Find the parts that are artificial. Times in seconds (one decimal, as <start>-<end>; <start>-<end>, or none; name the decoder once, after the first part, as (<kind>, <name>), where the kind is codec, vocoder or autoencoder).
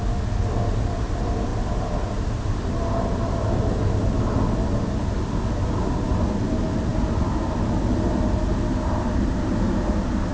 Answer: none